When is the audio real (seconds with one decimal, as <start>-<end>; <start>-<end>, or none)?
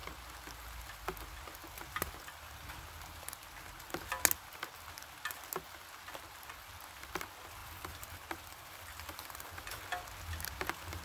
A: 0.0-7.6; 9.8-11.0